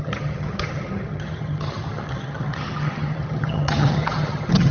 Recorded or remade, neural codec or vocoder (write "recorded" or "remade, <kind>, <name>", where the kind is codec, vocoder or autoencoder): remade, vocoder, HiFi-GAN